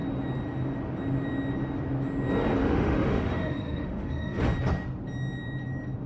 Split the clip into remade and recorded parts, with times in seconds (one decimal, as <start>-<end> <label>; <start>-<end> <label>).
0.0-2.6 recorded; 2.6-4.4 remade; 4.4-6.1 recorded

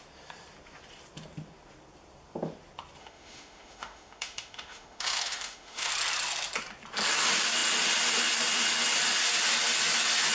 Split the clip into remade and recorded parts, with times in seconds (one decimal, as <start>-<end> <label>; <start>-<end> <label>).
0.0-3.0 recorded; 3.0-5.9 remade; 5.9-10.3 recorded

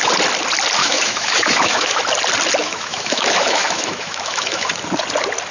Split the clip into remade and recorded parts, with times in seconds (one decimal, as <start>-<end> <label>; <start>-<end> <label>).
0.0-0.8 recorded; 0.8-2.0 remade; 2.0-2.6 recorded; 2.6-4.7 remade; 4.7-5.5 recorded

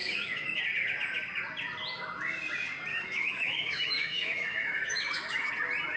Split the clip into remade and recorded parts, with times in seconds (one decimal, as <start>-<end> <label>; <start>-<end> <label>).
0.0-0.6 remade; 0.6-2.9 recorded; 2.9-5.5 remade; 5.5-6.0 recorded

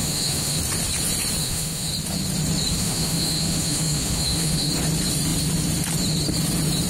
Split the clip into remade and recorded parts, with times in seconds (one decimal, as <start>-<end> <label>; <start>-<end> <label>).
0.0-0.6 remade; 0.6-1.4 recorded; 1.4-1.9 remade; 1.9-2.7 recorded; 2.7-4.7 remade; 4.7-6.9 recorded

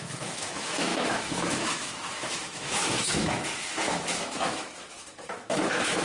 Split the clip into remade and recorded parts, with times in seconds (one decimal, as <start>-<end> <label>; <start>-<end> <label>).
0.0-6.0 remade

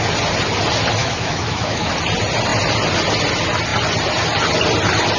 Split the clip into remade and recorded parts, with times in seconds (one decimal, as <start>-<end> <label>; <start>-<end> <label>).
0.0-1.0 recorded; 1.0-1.9 remade; 1.9-5.2 recorded

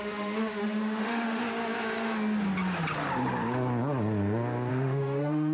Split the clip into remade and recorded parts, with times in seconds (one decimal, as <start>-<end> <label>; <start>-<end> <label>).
0.0-1.4 remade; 1.4-4.7 recorded; 4.7-5.5 remade